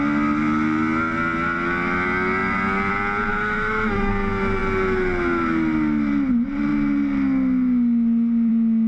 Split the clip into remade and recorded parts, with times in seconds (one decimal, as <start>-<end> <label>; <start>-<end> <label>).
0.0-3.3 recorded; 3.3-4.1 remade; 4.1-8.9 recorded